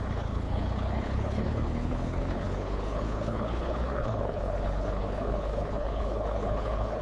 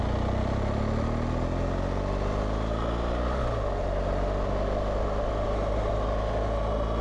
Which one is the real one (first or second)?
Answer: second